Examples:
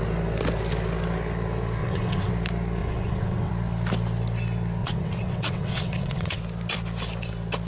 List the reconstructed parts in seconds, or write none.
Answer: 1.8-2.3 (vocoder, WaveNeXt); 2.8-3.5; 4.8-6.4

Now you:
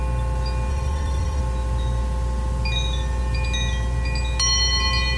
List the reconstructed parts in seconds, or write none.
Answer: 0.7-1.4 (vocoder, WaveNeXt)

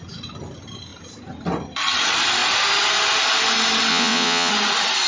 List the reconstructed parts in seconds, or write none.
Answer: 3.9-4.5 (vocoder, WaveNeXt)

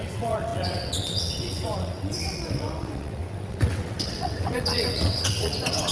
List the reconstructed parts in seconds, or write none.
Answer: 0.0-5.9 (vocoder, WaveNeXt)

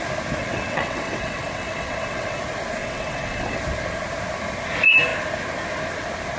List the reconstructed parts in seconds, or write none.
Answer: 0.4-2.4 (vocoder, WaveNeXt); 2.8-3.6

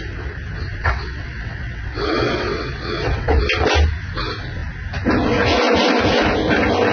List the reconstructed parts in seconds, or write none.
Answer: 0.8-3.3 (vocoder, WaveNeXt)

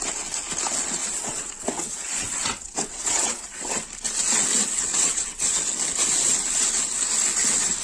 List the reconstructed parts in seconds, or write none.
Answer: 1.0-3.7 (vocoder, WaveNeXt); 4.6-5.6

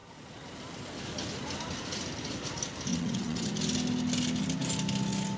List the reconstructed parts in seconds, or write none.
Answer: 2.9-3.5 (vocoder, WaveNeXt)